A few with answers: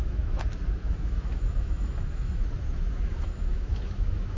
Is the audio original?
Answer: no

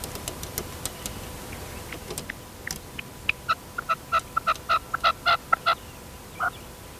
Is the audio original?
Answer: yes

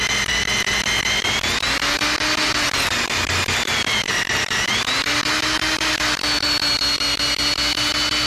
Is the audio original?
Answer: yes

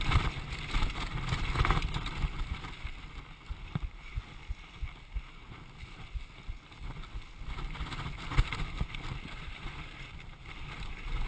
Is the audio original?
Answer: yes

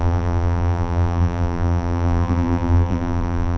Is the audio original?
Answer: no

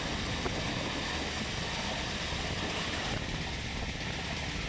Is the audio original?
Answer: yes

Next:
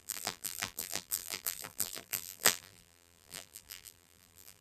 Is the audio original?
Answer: no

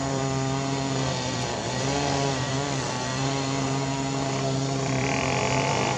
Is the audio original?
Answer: no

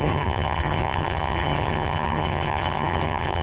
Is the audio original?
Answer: no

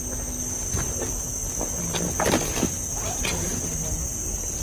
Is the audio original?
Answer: yes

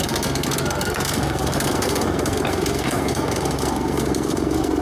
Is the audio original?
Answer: no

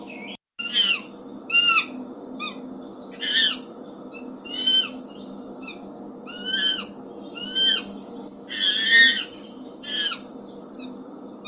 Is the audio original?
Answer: yes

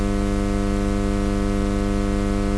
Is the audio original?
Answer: yes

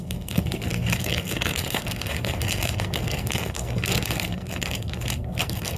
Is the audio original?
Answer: no